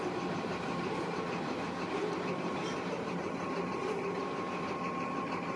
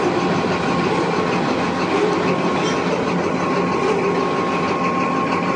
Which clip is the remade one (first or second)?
first